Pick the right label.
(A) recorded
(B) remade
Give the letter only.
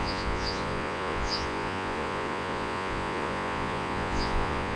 B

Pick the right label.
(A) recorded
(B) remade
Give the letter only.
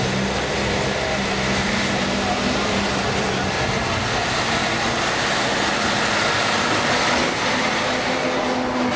A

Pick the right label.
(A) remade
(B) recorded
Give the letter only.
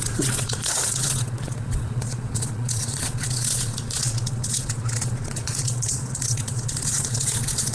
A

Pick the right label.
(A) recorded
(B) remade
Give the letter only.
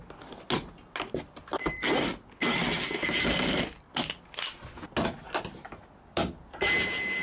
A